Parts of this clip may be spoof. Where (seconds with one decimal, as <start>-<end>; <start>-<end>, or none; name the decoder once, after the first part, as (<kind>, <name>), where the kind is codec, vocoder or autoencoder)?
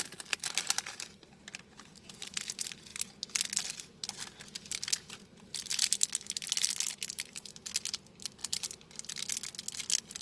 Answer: none